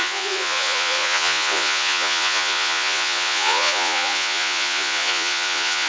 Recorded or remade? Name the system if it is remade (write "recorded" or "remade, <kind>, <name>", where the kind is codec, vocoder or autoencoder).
remade, vocoder, Vocos